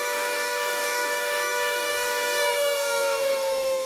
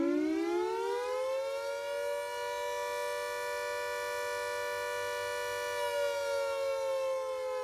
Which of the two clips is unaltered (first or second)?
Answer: second